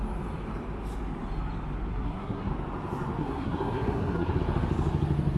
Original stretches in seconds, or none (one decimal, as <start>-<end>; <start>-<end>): 0.0-1.9; 2.5-3.2; 4.4-5.4